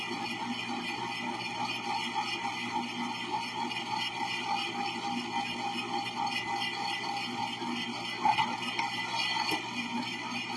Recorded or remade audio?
recorded